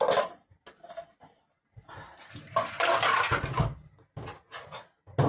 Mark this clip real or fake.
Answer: real